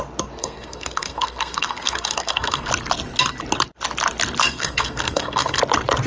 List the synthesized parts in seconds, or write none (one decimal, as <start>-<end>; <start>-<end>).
0.4-2.7; 4.4-5.6